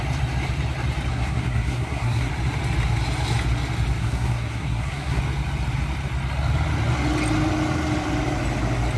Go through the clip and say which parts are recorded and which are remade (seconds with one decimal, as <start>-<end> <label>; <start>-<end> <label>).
0.0-1.1 recorded; 1.1-2.3 remade; 2.3-4.0 recorded; 4.0-5.2 remade; 5.2-9.0 recorded